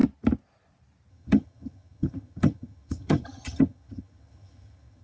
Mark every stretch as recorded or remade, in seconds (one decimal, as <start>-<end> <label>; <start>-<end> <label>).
0.0-1.1 recorded; 1.1-5.0 remade